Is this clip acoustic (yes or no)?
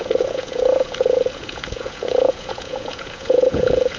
no